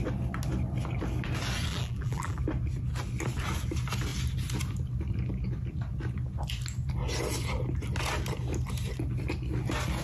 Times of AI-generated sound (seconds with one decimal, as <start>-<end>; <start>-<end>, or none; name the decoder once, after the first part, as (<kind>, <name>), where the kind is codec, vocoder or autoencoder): 1.7-2.4 (vocoder, BigVGAN v2)